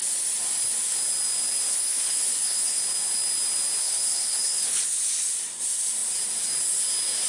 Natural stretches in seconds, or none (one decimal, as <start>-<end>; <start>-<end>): 0.0-1.7; 2.8-3.8; 4.8-7.3